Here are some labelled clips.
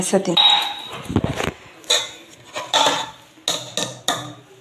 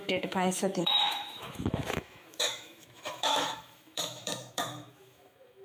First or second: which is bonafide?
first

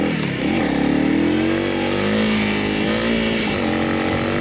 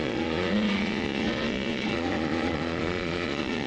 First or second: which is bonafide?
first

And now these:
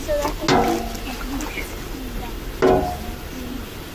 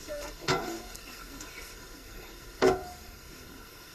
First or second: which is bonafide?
first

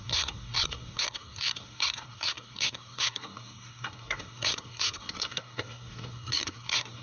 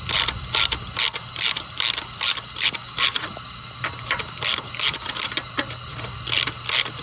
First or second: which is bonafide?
second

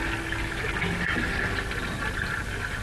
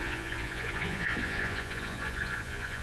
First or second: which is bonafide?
first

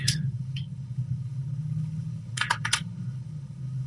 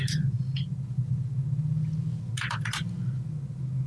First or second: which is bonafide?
second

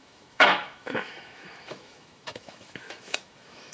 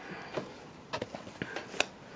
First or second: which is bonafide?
second